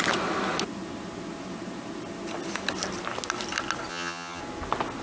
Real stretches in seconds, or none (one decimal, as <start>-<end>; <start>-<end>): 0.0-3.9; 4.4-5.0